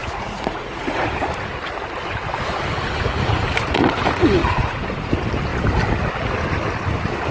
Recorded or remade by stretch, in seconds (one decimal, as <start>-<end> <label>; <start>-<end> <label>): 0.0-1.0 remade; 1.0-4.4 recorded; 4.4-5.1 remade; 5.1-7.3 recorded